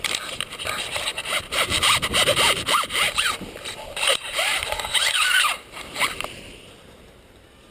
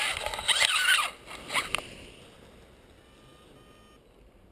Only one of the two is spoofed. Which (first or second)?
first